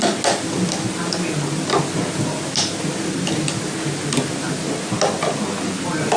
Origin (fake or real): real